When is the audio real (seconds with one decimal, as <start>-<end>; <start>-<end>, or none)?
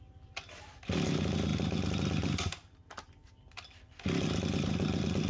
0.0-5.3